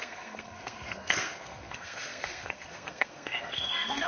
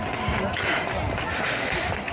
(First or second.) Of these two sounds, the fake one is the first